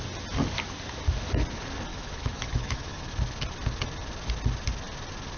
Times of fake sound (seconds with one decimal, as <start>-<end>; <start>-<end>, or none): 1.9-3.1